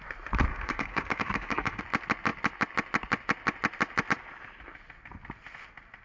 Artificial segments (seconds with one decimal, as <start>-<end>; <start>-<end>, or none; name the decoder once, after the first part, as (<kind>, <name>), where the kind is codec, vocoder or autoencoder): 0.5-1.8 (codec, DAC)